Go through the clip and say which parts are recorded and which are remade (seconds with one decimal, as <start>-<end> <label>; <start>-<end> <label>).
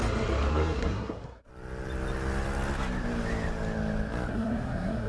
0.0-0.5 recorded; 0.5-1.5 remade; 1.5-4.3 recorded; 4.3-5.1 remade